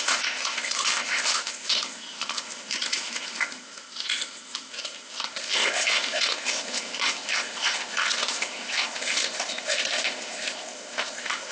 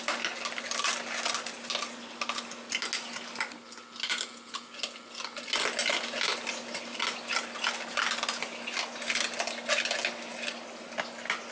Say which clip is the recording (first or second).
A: second